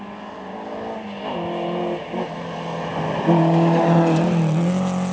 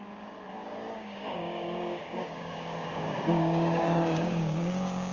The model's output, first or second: second